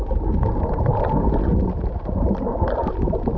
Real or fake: real